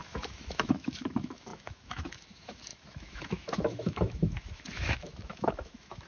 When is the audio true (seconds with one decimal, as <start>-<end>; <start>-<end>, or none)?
none

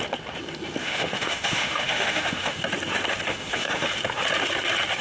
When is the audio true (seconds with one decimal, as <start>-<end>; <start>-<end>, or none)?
0.0-0.8; 2.6-3.3; 3.9-5.0

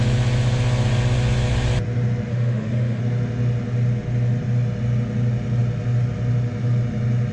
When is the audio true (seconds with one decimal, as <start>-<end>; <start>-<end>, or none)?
0.0-2.3; 3.0-7.3